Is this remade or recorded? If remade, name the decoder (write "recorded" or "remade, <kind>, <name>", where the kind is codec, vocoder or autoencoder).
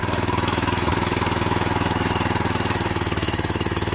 remade, autoencoder, DAC-VAE